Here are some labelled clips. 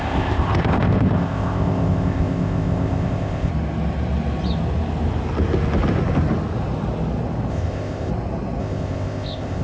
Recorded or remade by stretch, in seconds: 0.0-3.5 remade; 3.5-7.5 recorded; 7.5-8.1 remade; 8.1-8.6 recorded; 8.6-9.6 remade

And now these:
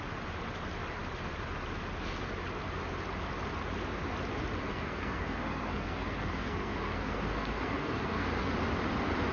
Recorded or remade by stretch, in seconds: 0.0-4.7 recorded; 4.7-8.5 remade; 8.5-9.3 recorded

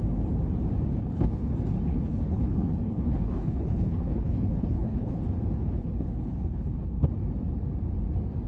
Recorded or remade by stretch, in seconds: 0.0-1.0 recorded; 1.0-1.5 remade; 1.5-1.9 recorded; 1.9-5.2 remade; 5.2-5.8 recorded; 5.8-7.1 remade; 7.1-8.5 recorded